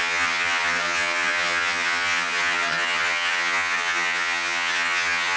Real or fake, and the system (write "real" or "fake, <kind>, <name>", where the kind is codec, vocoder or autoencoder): fake, vocoder, HiFi-GAN